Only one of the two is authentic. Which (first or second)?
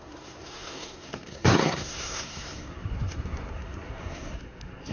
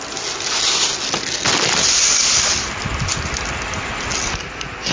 second